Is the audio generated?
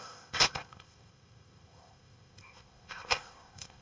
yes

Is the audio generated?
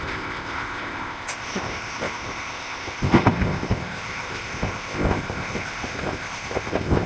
yes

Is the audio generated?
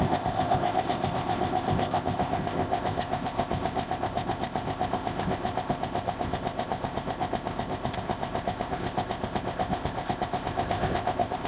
yes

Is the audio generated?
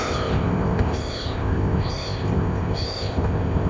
yes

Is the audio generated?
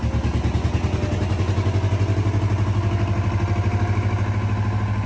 no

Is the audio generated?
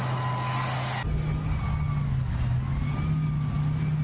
no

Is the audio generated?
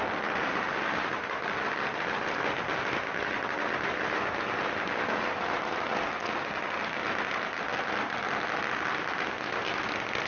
no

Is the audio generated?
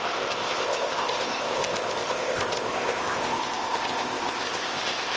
yes